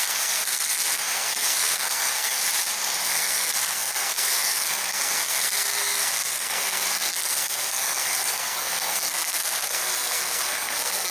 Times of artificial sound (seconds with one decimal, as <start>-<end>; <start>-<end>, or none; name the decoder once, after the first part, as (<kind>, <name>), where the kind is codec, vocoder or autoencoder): 0.0-2.4 (codec, SNAC); 3.0-11.1